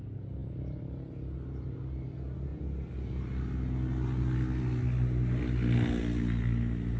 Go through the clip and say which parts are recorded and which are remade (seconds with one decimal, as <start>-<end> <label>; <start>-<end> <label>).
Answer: 0.0-0.4 recorded; 0.4-1.1 remade; 1.1-7.0 recorded